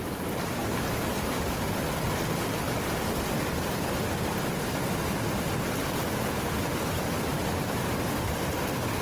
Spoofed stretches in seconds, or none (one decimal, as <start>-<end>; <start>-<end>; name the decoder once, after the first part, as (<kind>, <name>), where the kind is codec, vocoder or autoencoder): none